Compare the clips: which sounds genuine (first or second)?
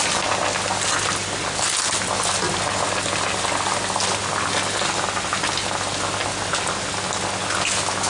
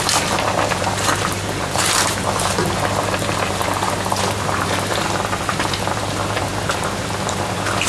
first